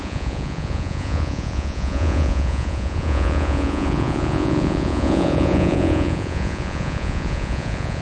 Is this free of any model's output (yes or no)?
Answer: no